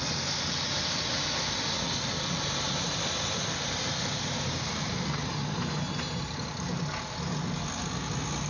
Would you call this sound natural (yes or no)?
yes